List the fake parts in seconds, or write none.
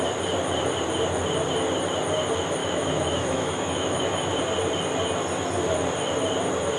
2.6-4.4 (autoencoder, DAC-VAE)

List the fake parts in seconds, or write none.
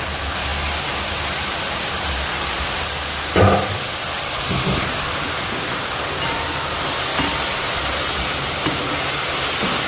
7.1-8.8 (vocoder, BigVGAN v2)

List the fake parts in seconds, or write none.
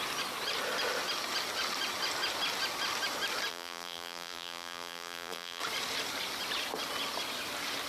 3.5-5.6 (vocoder, BigVGAN v2)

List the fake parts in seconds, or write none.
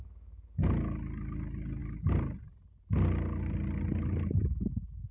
none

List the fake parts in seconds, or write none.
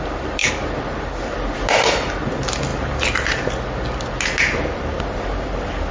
none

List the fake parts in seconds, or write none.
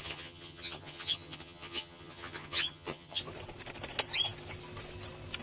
0.0-3.2 (vocoder, HiFi-GAN)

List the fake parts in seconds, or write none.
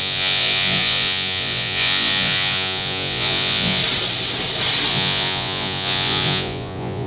0.0-3.8 (vocoder, Vocos); 4.9-7.1